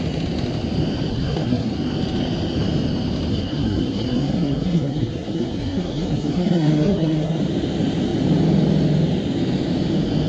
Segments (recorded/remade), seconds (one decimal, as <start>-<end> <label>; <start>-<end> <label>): 0.0-1.1 recorded; 1.1-1.7 remade; 1.7-3.3 recorded; 3.3-7.4 remade; 7.4-10.3 recorded